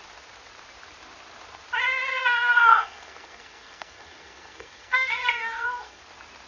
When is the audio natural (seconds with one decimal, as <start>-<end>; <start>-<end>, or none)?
0.0-2.1; 6.0-6.5